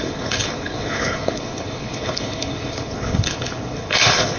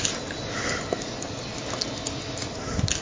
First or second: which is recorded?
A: second